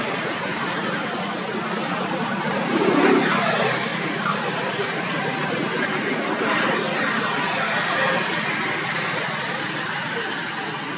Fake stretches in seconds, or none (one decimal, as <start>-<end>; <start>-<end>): 0.5-3.3; 3.9-6.3